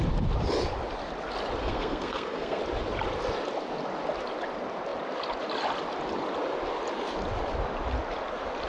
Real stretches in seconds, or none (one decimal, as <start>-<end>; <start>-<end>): 0.0-1.6; 2.6-8.7